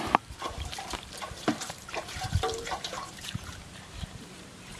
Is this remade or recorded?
remade